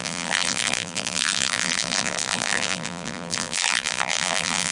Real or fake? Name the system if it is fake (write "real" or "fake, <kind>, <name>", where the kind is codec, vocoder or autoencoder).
fake, vocoder, BigVGAN v2